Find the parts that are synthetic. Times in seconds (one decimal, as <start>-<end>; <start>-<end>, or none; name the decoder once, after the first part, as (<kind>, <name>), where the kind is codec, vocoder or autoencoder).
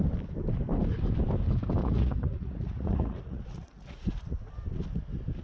1.8-4.5 (vocoder, Vocos)